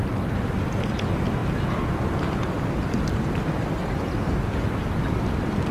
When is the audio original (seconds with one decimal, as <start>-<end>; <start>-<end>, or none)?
0.0-5.7